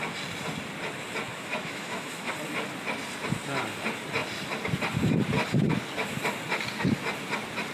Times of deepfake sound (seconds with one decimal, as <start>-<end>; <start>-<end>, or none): 1.3-2.3